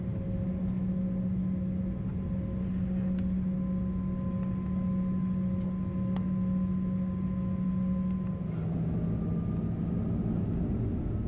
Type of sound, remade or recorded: recorded